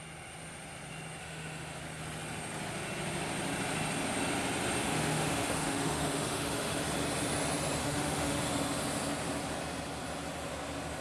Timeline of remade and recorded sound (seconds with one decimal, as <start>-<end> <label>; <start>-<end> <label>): 0.0-1.2 recorded; 1.2-1.8 remade; 1.8-4.8 recorded; 4.8-6.8 remade; 6.8-7.8 recorded; 7.8-8.4 remade; 8.4-11.0 recorded